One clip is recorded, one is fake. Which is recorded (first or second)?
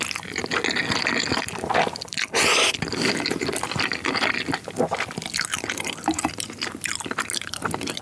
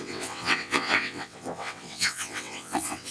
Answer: first